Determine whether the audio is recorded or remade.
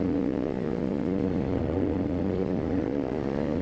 remade